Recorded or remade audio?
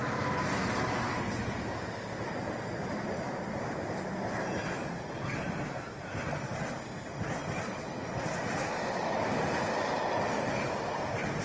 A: recorded